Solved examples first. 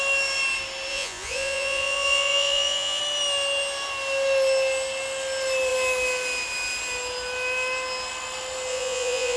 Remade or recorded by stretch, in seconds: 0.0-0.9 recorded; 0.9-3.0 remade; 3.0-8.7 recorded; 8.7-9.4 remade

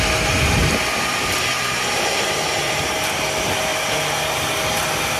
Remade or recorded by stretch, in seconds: 0.0-5.2 recorded

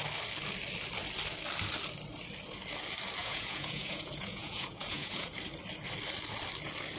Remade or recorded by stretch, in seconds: 0.0-3.2 recorded; 3.2-5.4 remade; 5.4-7.0 recorded

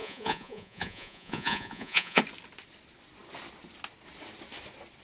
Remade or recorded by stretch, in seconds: 0.0-2.2 remade; 2.2-5.0 recorded

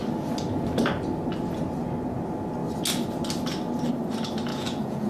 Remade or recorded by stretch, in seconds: 0.0-4.5 recorded; 4.5-5.1 remade